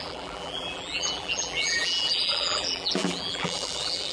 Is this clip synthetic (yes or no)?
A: yes